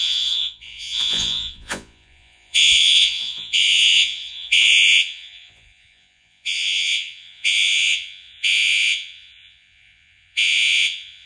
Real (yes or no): no